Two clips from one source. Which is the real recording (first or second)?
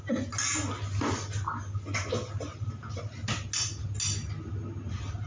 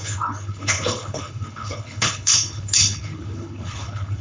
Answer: first